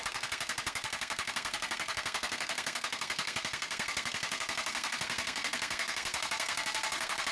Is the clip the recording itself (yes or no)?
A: no